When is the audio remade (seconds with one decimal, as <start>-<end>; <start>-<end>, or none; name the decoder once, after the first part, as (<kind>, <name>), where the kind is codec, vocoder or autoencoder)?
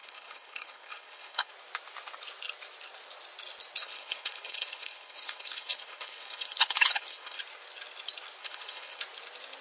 0.0-1.5 (codec, HILCodec); 3.8-7.4; 8.4-9.0